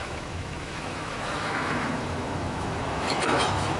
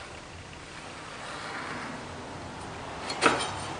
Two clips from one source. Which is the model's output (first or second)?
first